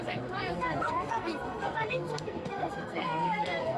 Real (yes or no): no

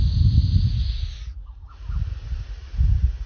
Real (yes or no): yes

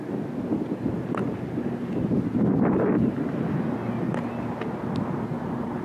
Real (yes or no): yes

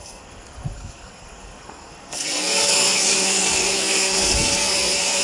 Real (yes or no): no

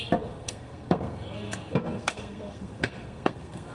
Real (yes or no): no